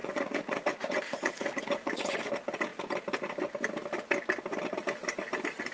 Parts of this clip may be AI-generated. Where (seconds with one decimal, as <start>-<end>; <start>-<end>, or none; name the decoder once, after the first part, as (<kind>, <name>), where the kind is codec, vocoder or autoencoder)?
0.0-2.3 (vocoder, Vocos)

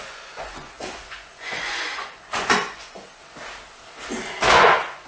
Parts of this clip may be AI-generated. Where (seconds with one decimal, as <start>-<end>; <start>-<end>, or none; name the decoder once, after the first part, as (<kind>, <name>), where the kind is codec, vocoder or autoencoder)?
0.0-3.2 (vocoder, Vocos); 4.5-5.1